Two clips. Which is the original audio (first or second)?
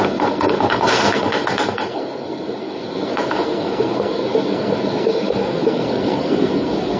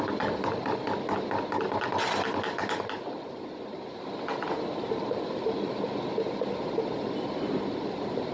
second